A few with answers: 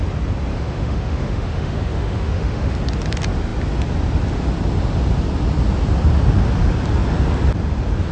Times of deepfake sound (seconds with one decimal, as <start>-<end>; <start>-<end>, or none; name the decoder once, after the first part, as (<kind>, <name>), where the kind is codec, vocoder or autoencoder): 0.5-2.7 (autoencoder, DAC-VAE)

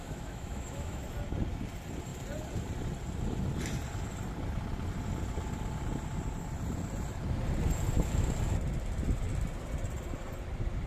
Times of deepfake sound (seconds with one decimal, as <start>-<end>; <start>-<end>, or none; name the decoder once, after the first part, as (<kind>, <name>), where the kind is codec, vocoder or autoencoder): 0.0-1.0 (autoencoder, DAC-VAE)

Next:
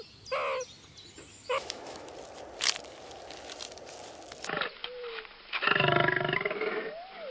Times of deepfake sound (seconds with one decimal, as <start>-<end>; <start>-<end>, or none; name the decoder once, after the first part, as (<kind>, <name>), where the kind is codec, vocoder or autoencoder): 1.3-2.1 (autoencoder, DAC-VAE)

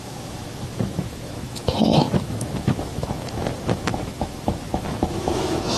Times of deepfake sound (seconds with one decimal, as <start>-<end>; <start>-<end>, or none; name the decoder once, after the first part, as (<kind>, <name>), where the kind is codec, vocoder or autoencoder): 0.0-5.8 (autoencoder, DAC-VAE)